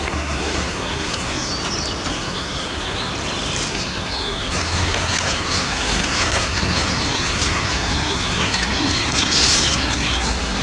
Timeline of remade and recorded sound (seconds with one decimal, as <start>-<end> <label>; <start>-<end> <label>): 0.0-1.5 remade; 1.5-2.1 recorded; 2.1-3.1 remade; 3.1-3.7 recorded; 3.7-10.6 remade

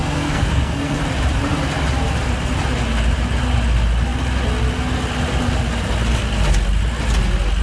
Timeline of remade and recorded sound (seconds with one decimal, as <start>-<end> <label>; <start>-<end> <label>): 0.0-1.0 remade; 1.0-7.6 recorded

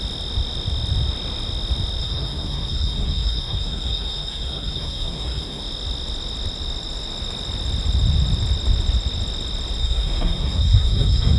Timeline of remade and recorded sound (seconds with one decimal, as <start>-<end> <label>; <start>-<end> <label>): 0.0-2.0 recorded; 2.0-5.6 remade; 5.6-9.8 recorded; 9.8-11.4 remade

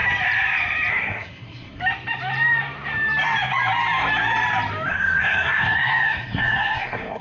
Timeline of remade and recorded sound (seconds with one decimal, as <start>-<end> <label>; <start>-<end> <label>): 0.0-0.9 recorded; 0.9-1.8 remade; 1.8-4.9 recorded; 4.9-7.2 remade

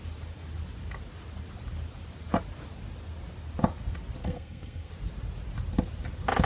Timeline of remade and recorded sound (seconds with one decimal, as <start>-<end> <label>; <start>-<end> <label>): 0.0-4.2 recorded; 4.2-4.9 remade; 4.9-6.4 recorded

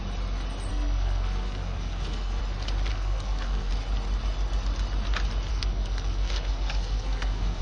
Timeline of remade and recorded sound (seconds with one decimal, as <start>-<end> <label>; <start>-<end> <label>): 0.0-0.7 recorded; 0.7-2.4 remade; 2.4-2.9 recorded; 2.9-3.7 remade; 3.7-5.5 recorded; 5.5-7.6 remade

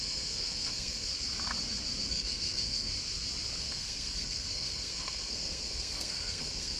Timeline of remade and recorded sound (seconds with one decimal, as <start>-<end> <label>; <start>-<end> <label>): 0.0-1.1 remade; 1.1-2.1 recorded; 2.1-2.9 remade; 2.9-3.6 recorded; 3.6-6.8 remade

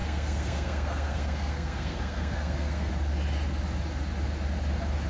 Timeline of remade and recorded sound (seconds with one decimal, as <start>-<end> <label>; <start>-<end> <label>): 0.0-2.9 remade; 2.9-5.1 recorded